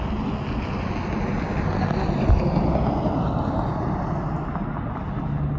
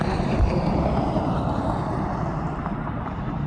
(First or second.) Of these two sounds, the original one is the first